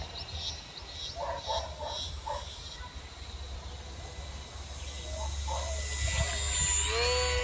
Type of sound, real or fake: real